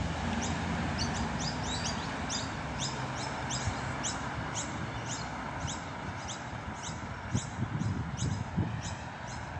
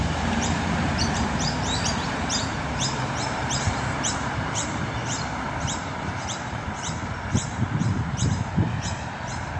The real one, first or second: first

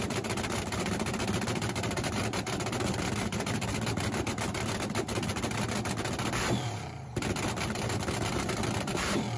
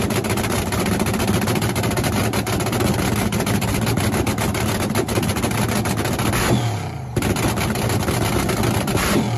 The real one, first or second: second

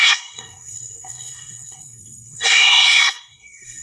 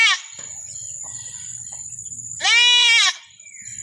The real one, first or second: second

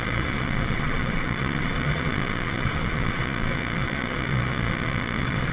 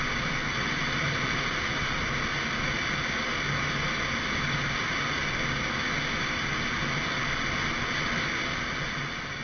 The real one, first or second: second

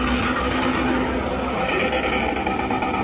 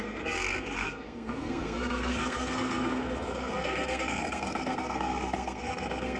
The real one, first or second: first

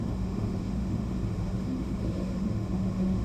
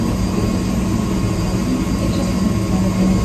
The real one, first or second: second